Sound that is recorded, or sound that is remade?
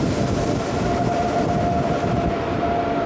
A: recorded